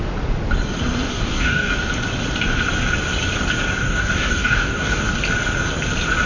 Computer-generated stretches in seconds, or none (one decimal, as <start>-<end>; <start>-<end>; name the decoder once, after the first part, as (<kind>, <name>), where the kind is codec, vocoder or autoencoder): 1.1-1.7 (codec, DAC); 3.8-5.0